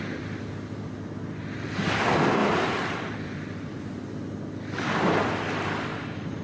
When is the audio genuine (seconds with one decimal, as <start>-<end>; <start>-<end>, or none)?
0.0-2.4; 3.8-5.9